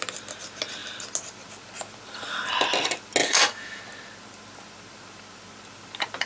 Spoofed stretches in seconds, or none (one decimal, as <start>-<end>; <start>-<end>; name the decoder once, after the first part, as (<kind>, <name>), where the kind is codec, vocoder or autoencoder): 3.2-3.8 (autoencoder, DAC-VAE)